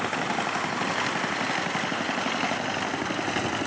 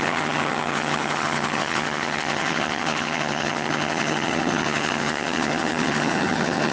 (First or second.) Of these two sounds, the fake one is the second